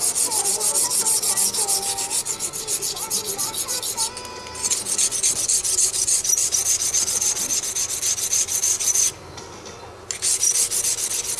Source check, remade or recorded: recorded